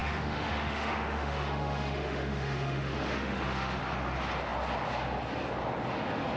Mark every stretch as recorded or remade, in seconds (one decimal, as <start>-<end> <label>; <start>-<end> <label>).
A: 0.0-3.8 remade; 3.8-6.4 recorded